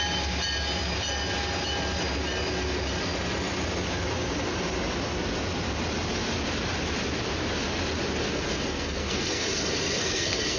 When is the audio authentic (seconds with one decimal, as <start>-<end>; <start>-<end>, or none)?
0.0-8.2